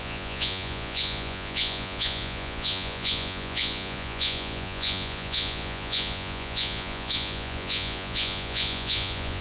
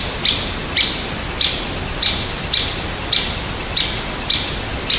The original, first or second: second